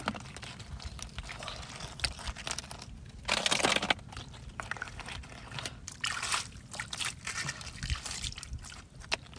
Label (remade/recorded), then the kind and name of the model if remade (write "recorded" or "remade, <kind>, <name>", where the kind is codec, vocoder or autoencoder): recorded